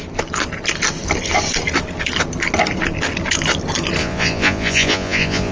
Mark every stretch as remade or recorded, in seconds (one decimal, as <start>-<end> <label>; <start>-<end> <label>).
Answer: 0.0-4.0 recorded; 4.0-5.5 remade